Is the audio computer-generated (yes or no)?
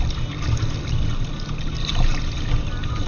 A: no